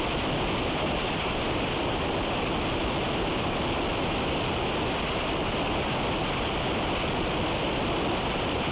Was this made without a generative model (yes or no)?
yes